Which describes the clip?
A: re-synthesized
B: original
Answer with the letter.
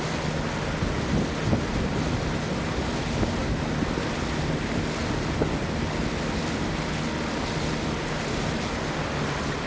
B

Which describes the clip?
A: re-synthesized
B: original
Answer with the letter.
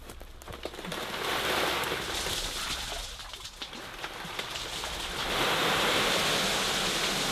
B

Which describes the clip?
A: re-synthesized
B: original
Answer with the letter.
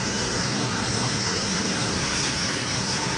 A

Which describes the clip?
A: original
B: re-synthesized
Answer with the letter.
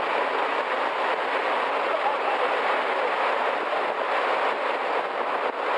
A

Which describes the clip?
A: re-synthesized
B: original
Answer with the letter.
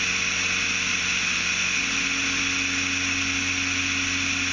B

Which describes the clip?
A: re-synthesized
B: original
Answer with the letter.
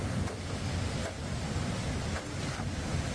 B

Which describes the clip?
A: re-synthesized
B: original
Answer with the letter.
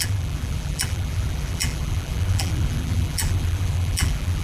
A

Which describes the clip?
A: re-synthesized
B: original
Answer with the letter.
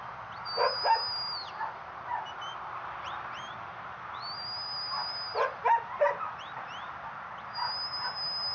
B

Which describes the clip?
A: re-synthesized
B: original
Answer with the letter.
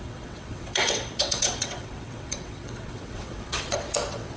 A